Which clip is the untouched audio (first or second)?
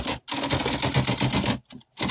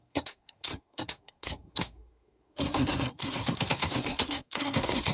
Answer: first